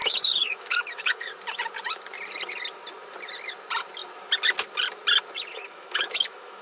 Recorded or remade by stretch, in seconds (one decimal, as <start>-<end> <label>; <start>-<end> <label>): 0.0-1.3 remade; 1.3-5.5 recorded; 5.5-6.6 remade